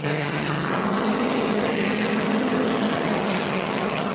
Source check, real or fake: fake